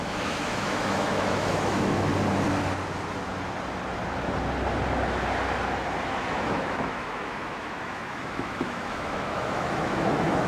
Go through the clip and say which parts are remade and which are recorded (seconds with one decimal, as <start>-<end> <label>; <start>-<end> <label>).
0.0-2.1 remade; 2.1-6.3 recorded; 6.3-10.5 remade